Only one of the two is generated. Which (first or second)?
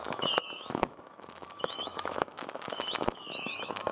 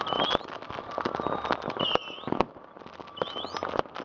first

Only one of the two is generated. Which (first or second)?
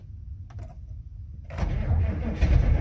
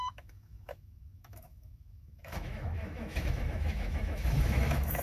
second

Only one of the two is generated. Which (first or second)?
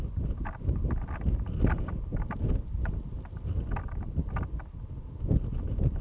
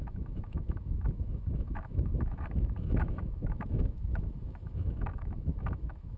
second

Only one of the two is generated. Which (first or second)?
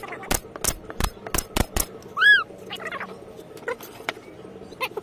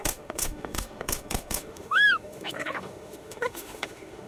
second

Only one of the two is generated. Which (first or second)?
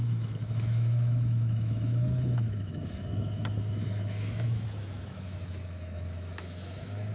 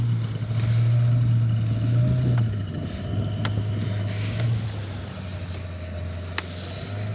first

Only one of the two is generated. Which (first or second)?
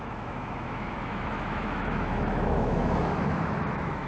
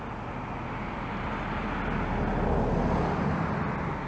first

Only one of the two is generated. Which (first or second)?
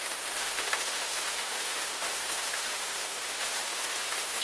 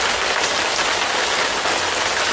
first